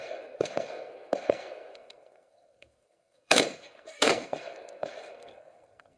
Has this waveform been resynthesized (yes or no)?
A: yes